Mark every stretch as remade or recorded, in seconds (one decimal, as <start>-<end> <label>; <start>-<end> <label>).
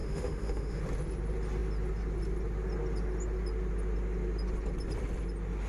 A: 0.0-0.8 remade; 0.8-5.7 recorded